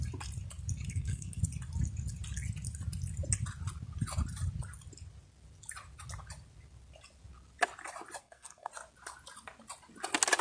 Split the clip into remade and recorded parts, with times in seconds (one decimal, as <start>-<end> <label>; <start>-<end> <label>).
0.0-0.9 recorded; 0.9-1.4 remade; 1.4-8.2 recorded; 8.2-8.7 remade; 8.7-10.4 recorded